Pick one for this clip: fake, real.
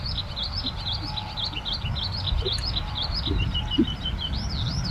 real